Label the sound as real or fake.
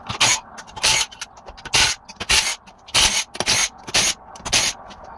real